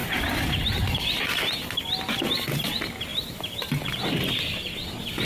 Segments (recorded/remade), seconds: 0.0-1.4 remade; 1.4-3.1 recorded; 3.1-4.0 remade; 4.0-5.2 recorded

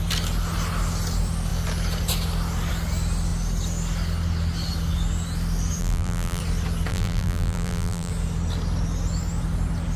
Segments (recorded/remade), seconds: 0.0-5.8 recorded; 5.8-6.4 remade; 6.4-6.9 recorded; 6.9-8.1 remade; 8.1-10.0 recorded